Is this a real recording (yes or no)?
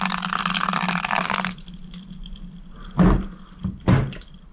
yes